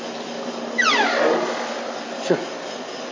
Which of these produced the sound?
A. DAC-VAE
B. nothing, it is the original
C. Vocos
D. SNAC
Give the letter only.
B